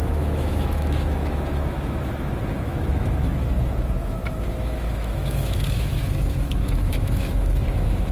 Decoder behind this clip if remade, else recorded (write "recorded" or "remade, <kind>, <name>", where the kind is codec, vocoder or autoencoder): remade, autoencoder, DAC-VAE